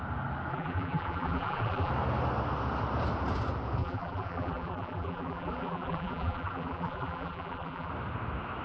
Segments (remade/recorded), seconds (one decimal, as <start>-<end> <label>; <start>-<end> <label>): 0.0-0.5 recorded; 0.5-1.9 remade; 1.9-3.8 recorded; 3.8-7.9 remade; 7.9-8.6 recorded